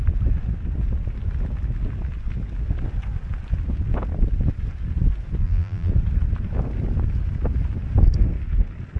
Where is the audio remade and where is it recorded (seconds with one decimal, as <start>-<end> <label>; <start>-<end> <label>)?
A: 0.0-5.4 recorded; 5.4-5.9 remade; 5.9-9.0 recorded